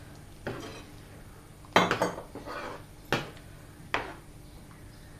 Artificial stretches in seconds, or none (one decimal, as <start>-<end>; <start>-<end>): none